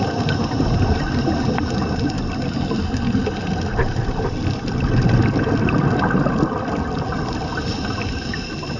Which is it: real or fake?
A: real